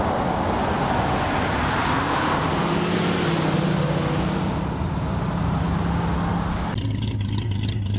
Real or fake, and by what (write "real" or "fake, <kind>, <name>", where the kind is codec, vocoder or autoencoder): real